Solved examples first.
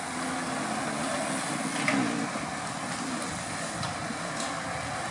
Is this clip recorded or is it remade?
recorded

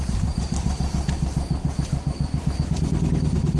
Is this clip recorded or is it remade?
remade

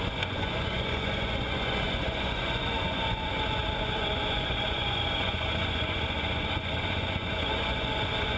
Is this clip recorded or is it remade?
remade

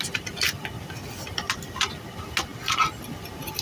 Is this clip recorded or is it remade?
recorded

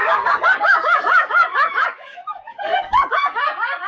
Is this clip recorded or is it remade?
remade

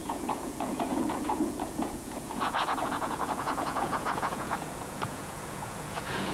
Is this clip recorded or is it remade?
remade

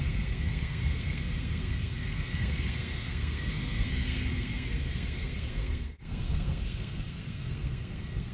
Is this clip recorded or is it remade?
remade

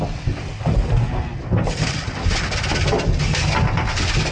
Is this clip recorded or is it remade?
recorded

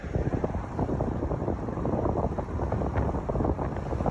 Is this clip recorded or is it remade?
recorded